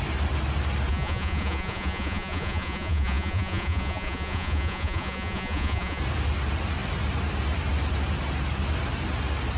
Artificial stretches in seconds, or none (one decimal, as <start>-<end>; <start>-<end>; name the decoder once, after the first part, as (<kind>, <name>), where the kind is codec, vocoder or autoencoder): 0.9-6.0 (vocoder, Vocos)

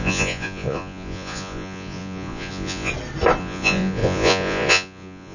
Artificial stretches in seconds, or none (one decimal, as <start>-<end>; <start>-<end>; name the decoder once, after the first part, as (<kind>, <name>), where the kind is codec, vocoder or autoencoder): 0.0-2.9 (vocoder, Vocos); 3.4-5.3

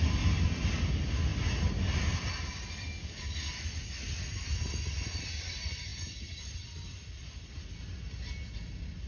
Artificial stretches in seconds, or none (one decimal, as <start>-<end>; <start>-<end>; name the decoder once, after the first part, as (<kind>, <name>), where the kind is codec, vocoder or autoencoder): none

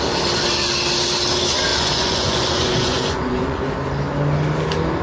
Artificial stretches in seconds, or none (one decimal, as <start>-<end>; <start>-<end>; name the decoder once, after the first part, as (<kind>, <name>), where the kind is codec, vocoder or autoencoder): 1.7-3.6 (vocoder, Vocos)